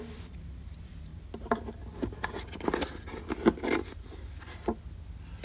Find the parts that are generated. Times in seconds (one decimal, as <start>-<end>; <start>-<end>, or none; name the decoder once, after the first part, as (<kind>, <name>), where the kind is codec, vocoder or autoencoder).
none